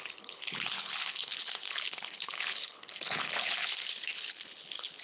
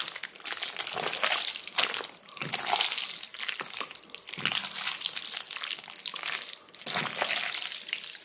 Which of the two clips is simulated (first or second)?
first